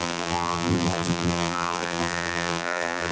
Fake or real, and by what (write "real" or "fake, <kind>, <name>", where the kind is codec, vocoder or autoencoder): fake, vocoder, BigVGAN v2